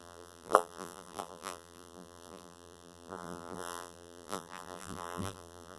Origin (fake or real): fake